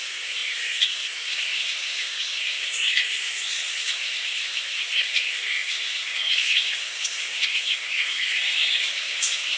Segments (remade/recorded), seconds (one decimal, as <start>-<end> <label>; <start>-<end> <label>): 0.0-9.6 remade

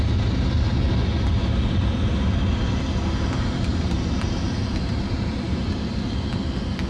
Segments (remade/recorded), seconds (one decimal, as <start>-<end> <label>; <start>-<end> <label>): 0.0-3.7 recorded; 3.7-5.7 remade; 5.7-6.9 recorded

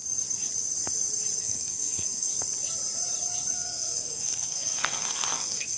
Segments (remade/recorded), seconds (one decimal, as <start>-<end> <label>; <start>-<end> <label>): 0.0-1.4 recorded; 1.4-2.3 remade; 2.3-3.5 recorded; 3.5-5.8 remade

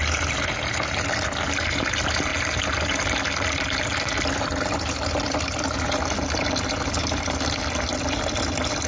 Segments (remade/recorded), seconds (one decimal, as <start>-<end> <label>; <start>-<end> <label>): 0.0-8.9 recorded